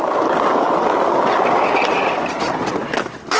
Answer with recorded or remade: recorded